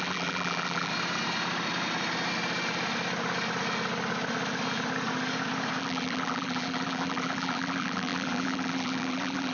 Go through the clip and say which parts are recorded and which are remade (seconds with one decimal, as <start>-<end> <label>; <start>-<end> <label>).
0.0-0.9 remade; 0.9-5.8 recorded; 5.8-9.5 remade